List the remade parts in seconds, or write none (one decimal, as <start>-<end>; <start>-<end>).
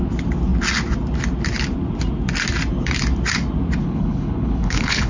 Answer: 3.8-5.1